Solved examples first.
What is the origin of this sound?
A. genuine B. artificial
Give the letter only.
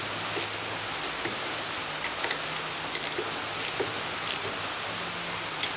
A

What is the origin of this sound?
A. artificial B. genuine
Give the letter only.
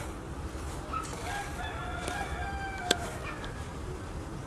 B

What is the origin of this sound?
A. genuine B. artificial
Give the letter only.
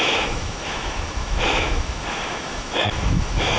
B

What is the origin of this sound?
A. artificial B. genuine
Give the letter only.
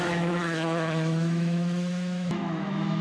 A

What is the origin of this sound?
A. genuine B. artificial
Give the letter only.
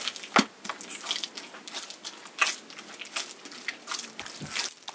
A